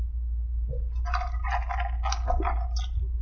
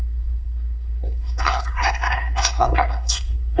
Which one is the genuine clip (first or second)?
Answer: first